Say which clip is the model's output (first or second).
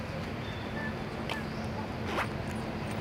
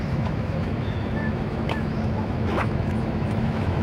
second